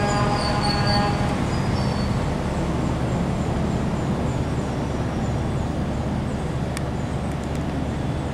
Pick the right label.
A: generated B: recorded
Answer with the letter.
B